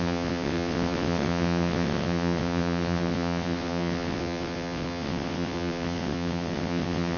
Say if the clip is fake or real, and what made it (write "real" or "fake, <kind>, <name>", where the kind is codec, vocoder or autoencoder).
fake, vocoder, WaveNeXt